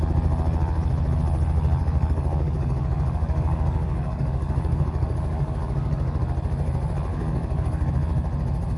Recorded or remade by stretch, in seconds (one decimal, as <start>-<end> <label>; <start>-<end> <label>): 0.0-1.8 recorded; 1.8-6.2 remade; 6.2-7.1 recorded; 7.1-7.9 remade; 7.9-8.8 recorded